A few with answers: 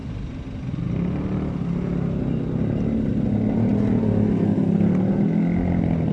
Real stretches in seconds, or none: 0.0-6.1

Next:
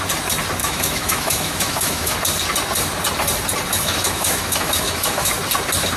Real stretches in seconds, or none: 0.0-0.6; 2.2-3.7; 5.3-6.0

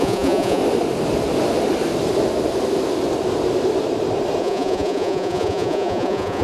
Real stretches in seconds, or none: 0.6-4.4